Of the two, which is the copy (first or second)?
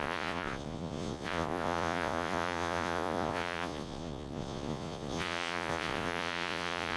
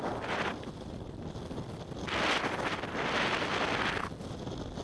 first